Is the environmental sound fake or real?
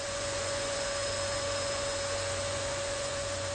fake